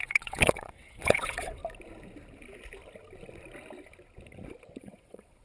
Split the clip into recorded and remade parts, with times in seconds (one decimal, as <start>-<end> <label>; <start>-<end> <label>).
0.0-1.6 remade; 1.6-4.8 recorded; 4.8-5.4 remade